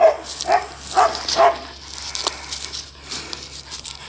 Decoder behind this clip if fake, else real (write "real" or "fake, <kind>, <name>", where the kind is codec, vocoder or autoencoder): real